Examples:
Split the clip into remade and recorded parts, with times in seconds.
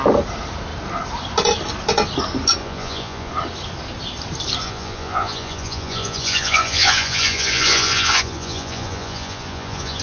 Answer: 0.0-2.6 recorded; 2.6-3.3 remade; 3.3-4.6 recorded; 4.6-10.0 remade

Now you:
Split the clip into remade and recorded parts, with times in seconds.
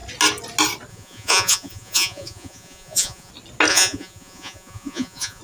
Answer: 0.0-0.9 recorded; 0.9-3.3 remade; 3.3-3.7 recorded; 3.7-5.4 remade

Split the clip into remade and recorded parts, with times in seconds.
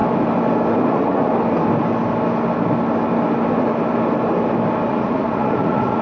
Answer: 0.0-0.9 recorded; 0.9-1.3 remade; 1.3-4.9 recorded; 4.9-6.0 remade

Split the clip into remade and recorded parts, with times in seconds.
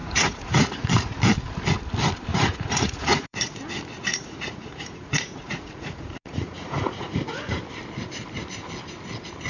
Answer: 0.0-1.2 remade; 1.2-2.3 recorded; 2.3-3.6 remade; 3.6-4.1 recorded; 4.1-7.6 remade; 7.6-9.5 recorded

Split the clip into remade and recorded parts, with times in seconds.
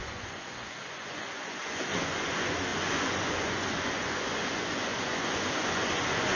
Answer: 0.0-6.4 remade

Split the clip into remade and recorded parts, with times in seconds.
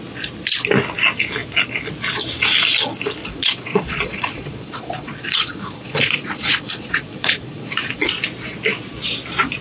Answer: 0.0-3.2 recorded; 3.2-8.1 remade; 8.1-9.6 recorded